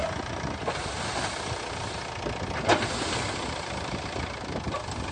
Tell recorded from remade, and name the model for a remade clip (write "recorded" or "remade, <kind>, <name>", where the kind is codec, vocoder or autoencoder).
recorded